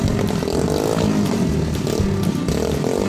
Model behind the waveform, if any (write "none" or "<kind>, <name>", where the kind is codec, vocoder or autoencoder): none